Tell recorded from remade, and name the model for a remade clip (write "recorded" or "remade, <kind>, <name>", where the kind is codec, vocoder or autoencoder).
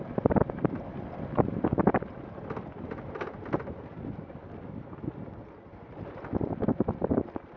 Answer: recorded